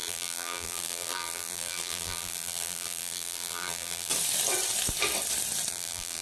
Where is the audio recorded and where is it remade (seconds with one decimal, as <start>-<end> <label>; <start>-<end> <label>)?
0.0-4.1 remade; 4.1-5.7 recorded; 5.7-6.2 remade